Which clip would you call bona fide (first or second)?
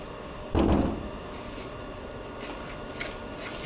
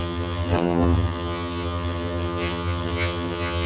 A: first